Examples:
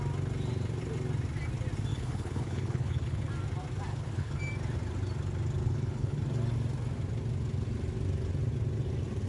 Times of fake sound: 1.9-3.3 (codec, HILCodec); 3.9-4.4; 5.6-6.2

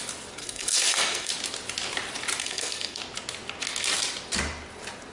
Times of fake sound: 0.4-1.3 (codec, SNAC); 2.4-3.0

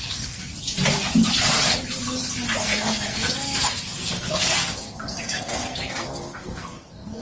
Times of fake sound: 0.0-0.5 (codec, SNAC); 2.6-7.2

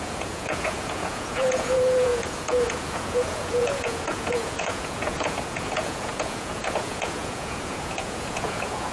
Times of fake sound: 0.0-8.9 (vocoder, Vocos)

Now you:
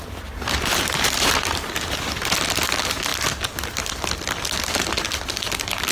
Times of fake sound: 0.7-1.3 (vocoder, BigVGAN v2)

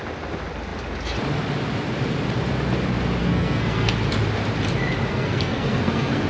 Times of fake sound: 3.2-3.9 (codec, SNAC); 5.1-6.3

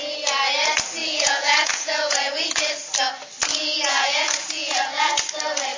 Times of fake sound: 1.0-2.7 (vocoder, Vocos); 3.5-5.2